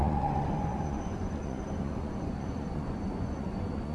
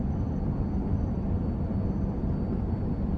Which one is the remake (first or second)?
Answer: first